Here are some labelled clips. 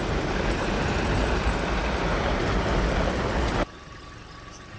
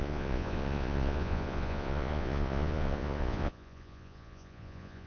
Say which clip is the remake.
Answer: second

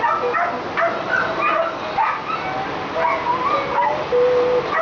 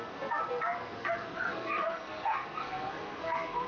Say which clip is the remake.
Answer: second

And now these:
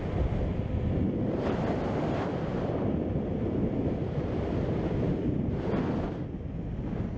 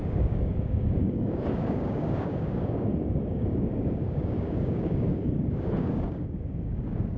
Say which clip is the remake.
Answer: second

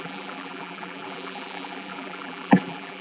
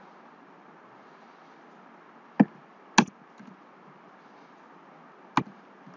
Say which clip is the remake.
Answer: first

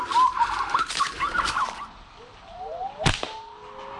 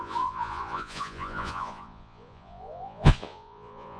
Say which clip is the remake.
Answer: second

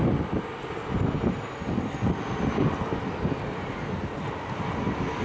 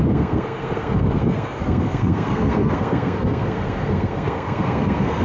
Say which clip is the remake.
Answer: second